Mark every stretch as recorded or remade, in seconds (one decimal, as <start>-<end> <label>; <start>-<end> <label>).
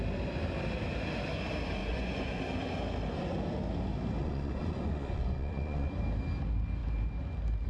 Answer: 0.0-1.8 recorded; 1.8-2.4 remade; 2.4-4.2 recorded; 4.2-5.9 remade; 5.9-7.7 recorded